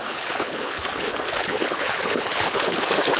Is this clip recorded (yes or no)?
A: no